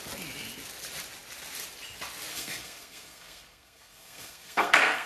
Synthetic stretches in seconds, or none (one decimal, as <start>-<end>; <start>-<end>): 2.3-5.1